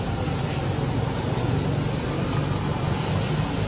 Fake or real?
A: real